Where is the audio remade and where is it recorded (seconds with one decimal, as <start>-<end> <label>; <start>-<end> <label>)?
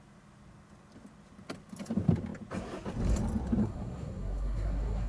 0.0-3.6 recorded; 3.6-5.1 remade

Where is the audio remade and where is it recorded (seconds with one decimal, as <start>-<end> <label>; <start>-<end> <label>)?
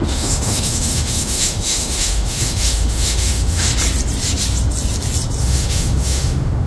0.0-3.7 remade; 3.7-5.4 recorded; 5.4-6.7 remade